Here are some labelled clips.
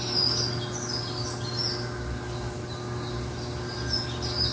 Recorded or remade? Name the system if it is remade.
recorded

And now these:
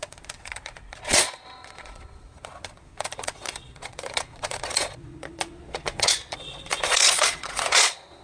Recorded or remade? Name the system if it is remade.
remade, vocoder, Vocos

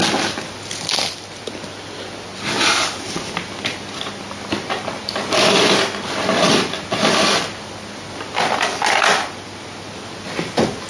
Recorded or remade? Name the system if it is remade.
recorded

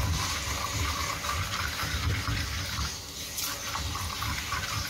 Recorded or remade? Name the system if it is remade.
recorded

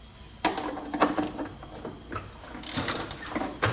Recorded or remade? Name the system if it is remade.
recorded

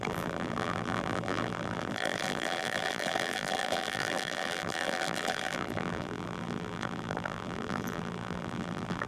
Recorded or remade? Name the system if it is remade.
remade, vocoder, BigVGAN v2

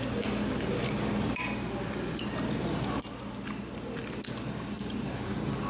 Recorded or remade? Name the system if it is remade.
recorded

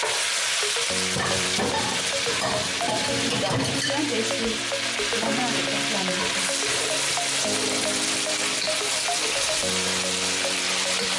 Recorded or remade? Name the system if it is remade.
remade, vocoder, BigVGAN v2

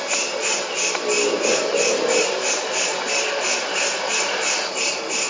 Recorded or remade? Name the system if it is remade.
recorded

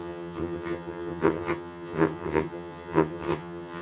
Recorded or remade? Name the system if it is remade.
remade, vocoder, HiFi-GAN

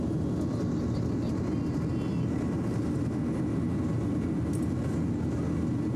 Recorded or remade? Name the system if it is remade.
recorded